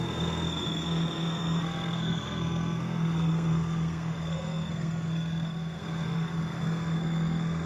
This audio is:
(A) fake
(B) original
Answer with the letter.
A